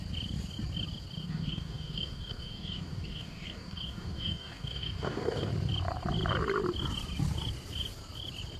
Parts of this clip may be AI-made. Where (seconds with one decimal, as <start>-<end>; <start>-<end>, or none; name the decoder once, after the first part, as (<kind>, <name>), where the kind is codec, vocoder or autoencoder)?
1.2-5.5 (codec, DAC)